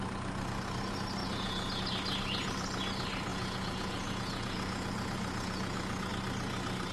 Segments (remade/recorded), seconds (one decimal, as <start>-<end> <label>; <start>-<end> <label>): 0.0-1.2 recorded; 1.2-1.8 remade; 1.8-3.3 recorded; 3.3-6.1 remade; 6.1-6.9 recorded